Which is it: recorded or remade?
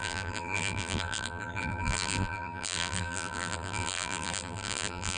remade